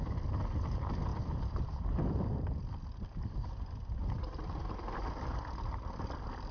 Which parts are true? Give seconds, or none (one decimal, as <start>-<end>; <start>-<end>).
0.0-1.1; 2.5-6.5